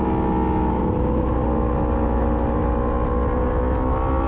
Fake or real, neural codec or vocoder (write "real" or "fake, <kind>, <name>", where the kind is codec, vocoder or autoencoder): real